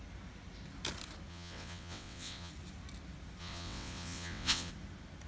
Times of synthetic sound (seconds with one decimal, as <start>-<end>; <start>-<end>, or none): 1.3-2.5; 3.4-4.7